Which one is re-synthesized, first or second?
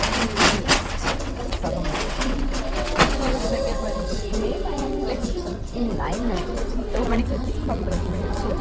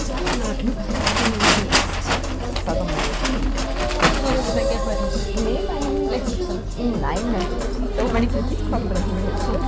first